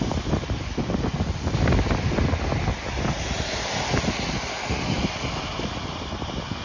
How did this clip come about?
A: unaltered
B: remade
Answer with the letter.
A